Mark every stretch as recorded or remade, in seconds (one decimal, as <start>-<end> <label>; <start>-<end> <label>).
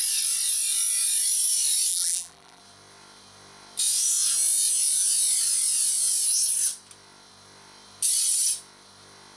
0.0-1.9 recorded; 1.9-2.6 remade; 2.6-9.4 recorded